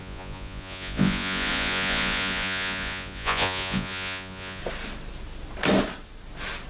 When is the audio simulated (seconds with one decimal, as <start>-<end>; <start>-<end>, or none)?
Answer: 0.0-4.6